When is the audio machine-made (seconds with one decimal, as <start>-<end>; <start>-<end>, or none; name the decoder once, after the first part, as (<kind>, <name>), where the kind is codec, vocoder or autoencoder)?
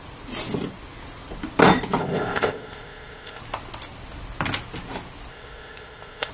2.0-3.4 (codec, ZipCodec); 5.3-6.3